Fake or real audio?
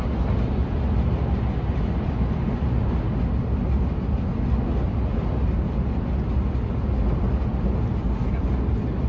real